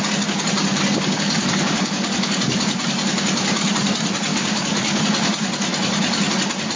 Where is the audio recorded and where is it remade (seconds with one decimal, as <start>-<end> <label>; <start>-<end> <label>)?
0.0-0.7 recorded; 0.7-2.4 remade; 2.4-4.3 recorded; 4.3-5.0 remade; 5.0-6.8 recorded